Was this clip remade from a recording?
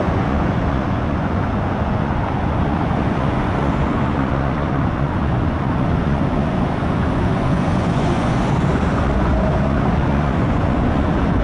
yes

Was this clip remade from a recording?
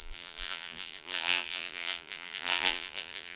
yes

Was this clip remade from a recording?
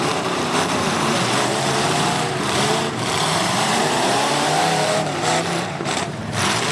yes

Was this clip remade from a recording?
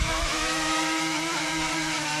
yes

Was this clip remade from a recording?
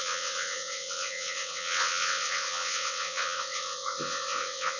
yes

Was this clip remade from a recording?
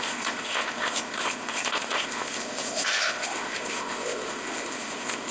yes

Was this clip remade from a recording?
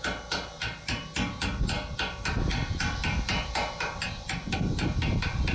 no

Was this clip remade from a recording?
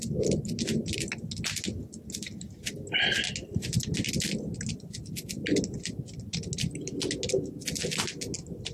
no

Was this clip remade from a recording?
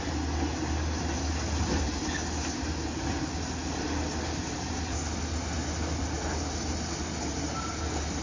no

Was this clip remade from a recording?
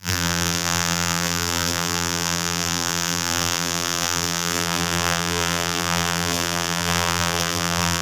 yes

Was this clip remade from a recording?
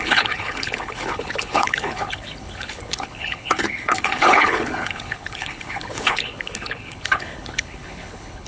yes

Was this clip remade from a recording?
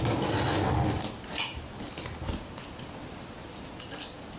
no